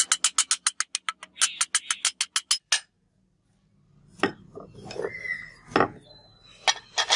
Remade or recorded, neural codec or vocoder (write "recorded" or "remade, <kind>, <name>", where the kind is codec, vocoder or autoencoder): recorded